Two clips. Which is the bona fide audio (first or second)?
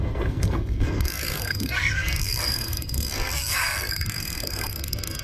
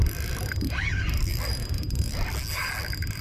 second